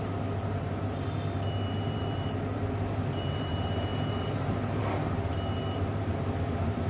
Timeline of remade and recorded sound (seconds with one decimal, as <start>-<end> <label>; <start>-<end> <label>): 0.0-6.9 remade